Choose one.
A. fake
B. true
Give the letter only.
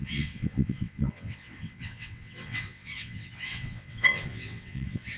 A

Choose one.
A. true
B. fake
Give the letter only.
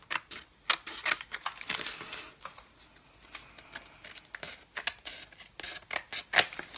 A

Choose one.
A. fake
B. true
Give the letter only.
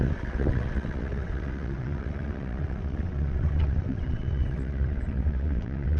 A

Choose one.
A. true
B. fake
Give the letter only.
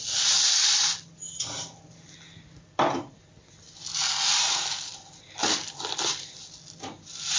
A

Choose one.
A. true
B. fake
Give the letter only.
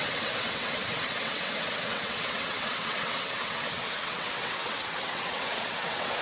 B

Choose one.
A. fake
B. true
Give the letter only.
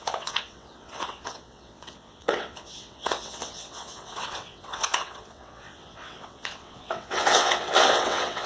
A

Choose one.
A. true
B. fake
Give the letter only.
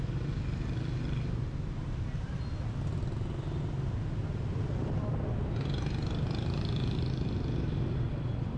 A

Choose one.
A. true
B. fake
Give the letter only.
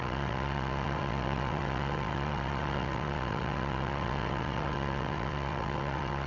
B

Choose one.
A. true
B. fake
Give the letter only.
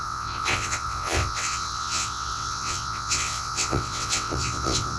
B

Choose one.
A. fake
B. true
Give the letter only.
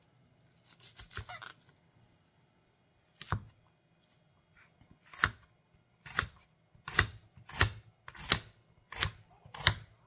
B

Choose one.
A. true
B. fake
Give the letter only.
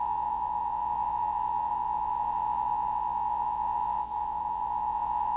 B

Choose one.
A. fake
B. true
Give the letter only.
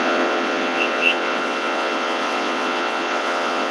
A